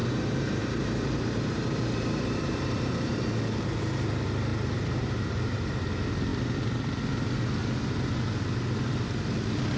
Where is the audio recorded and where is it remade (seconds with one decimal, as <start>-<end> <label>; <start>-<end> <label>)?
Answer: 0.0-3.2 remade; 3.2-4.5 recorded; 4.5-5.8 remade; 5.8-7.6 recorded; 7.6-8.2 remade; 8.2-9.8 recorded